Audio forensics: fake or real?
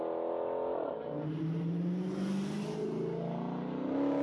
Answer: real